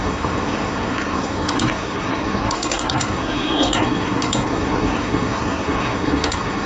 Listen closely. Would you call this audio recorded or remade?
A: remade